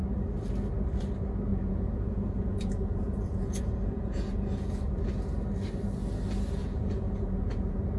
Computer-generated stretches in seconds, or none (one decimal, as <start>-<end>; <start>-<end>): 1.5-5.1; 6.6-8.0